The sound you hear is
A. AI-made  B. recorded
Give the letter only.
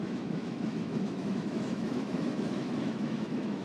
A